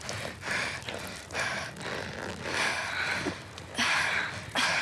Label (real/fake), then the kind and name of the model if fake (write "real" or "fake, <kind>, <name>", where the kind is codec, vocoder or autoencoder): real